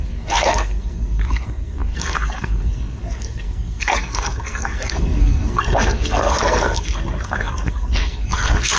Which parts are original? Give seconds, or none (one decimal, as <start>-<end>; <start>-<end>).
none